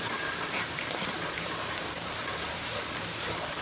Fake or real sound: fake